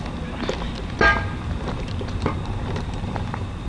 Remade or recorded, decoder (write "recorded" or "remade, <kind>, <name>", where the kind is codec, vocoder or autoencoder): recorded